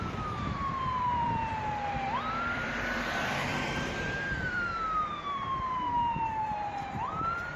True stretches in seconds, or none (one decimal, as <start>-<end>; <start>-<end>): none